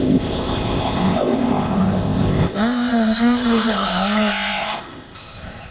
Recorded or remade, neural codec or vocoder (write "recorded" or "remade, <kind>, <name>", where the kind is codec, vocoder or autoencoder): remade, codec, ZipCodec